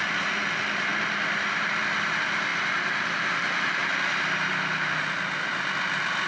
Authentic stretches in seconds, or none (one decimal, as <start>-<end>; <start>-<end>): 0.0-0.9; 2.1-6.3